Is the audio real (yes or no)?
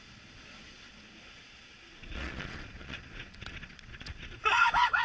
no